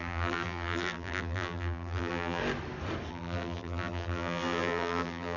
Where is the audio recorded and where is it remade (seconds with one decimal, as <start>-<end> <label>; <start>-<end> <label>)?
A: 0.0-2.4 remade; 2.4-3.1 recorded; 3.1-5.4 remade